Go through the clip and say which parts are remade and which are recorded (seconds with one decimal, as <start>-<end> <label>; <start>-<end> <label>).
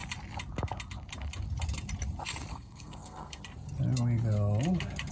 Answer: 0.0-2.5 recorded; 2.5-3.4 remade; 3.4-5.1 recorded